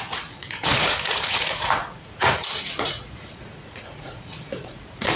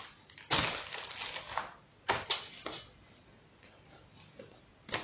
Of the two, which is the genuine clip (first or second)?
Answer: second